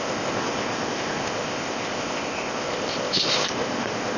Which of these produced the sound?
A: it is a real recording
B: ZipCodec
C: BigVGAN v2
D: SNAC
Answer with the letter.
B